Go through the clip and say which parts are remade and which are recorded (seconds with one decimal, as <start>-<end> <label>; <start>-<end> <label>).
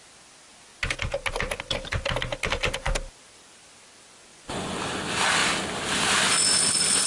0.0-4.3 recorded; 4.3-4.8 remade; 4.8-7.1 recorded